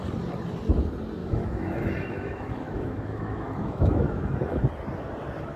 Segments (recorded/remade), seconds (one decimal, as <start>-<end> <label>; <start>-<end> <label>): 0.0-1.2 recorded; 1.2-4.6 remade; 4.6-5.6 recorded